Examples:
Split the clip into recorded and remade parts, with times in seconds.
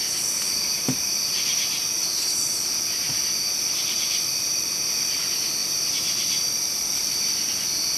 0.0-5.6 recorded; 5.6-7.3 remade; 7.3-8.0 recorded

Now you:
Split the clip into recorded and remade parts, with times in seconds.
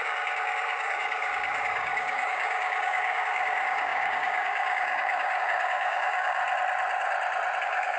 0.0-6.4 remade; 6.4-7.6 recorded; 7.6-8.0 remade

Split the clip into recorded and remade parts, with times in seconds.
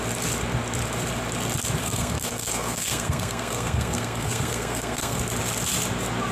0.0-1.8 recorded; 1.8-5.2 remade; 5.2-6.3 recorded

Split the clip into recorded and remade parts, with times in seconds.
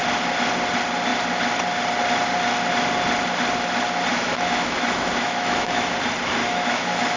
0.0-4.1 recorded; 4.1-5.9 remade; 5.9-6.4 recorded; 6.4-7.2 remade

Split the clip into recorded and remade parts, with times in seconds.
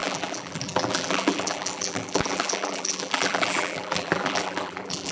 0.0-5.1 remade